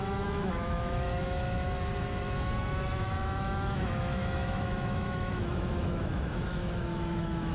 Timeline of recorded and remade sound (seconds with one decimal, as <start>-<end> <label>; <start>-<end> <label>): 0.0-7.5 remade